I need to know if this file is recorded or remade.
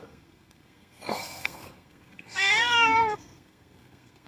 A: remade